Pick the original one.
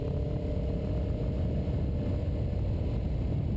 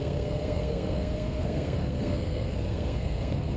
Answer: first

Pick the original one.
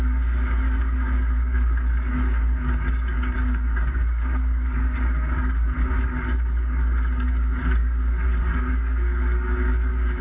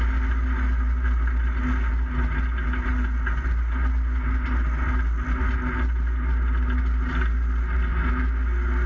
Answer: second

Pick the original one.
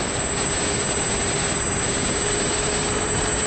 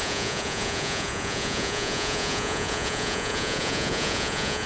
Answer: first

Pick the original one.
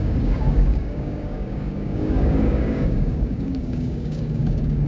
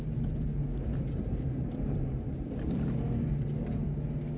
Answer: second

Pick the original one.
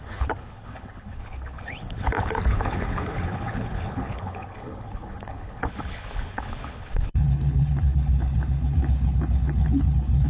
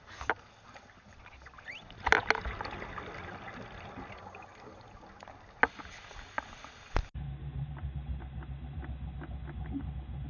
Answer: second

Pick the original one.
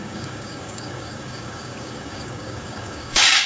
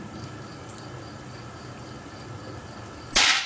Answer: second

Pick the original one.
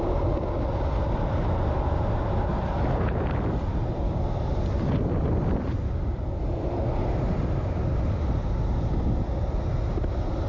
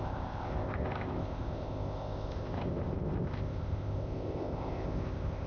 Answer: first